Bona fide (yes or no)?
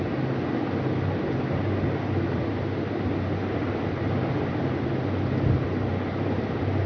yes